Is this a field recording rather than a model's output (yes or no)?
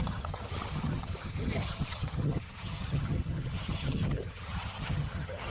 no